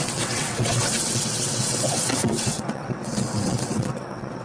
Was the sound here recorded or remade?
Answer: remade